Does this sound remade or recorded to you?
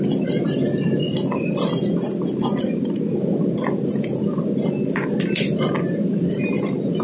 recorded